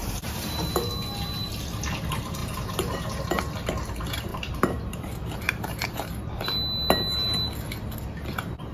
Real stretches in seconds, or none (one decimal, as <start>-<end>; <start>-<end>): 0.9-2.4; 3.4-4.3; 6.3-8.7